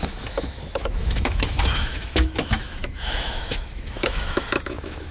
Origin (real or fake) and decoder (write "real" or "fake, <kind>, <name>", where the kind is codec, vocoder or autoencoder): fake, autoencoder, DAC-VAE